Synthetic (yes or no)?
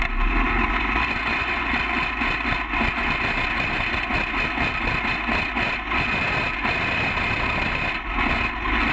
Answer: no